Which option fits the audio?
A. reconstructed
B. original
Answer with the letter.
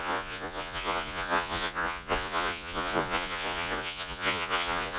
A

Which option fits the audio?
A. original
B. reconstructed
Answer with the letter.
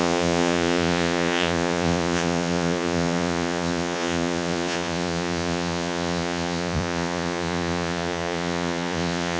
B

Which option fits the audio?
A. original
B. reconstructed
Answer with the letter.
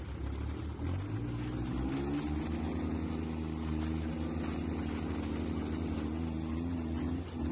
A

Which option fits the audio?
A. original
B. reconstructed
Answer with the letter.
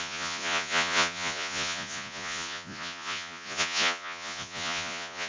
B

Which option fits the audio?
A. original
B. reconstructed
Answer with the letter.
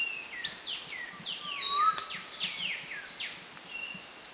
A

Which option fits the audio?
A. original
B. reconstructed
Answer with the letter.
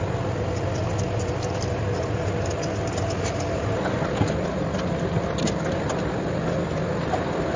A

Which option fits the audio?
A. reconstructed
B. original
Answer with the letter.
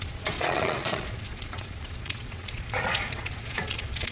A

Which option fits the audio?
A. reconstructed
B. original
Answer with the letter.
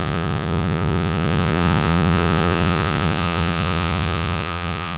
A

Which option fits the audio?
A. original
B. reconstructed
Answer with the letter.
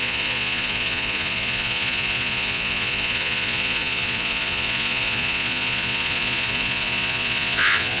B